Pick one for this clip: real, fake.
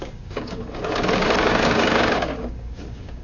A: fake